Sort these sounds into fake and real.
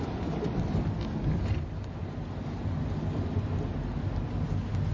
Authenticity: real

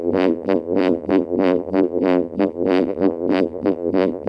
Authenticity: fake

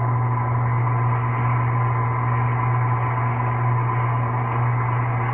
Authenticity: real